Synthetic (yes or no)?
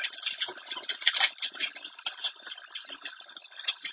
no